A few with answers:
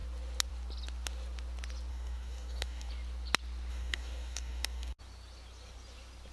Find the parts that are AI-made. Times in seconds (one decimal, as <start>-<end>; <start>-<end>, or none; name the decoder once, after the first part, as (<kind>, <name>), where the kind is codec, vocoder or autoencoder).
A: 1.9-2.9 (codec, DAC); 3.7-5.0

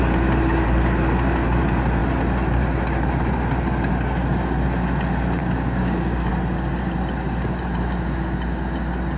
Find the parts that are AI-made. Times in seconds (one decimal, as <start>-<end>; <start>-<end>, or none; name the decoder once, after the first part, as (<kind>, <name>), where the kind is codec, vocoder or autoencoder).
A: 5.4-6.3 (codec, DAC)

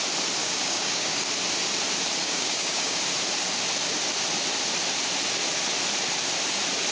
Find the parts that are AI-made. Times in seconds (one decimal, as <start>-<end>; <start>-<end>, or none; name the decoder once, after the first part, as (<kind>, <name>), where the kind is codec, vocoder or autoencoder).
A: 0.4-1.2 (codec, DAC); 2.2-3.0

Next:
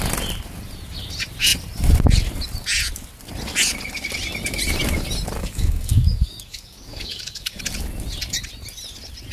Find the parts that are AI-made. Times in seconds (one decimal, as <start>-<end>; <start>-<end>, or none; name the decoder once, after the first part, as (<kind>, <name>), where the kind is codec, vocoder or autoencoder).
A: 5.4-7.6 (codec, DAC)

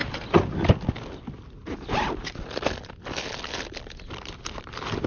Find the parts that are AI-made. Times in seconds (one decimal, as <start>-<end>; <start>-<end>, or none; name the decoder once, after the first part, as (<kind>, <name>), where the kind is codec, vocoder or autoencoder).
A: none